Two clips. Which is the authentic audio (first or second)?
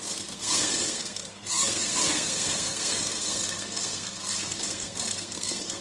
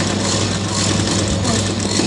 second